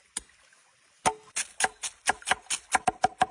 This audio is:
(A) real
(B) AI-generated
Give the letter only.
A